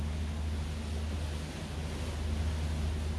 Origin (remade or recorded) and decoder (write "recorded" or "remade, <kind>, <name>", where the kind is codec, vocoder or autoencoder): recorded